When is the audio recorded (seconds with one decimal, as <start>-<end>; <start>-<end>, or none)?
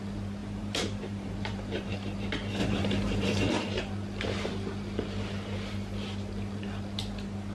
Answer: 0.0-0.4; 2.2-2.6; 3.5-7.5